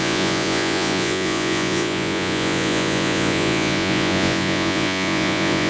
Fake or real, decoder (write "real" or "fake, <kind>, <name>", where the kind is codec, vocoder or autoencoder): fake, vocoder, Vocos